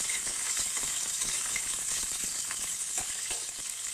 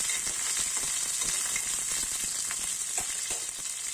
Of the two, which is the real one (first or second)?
second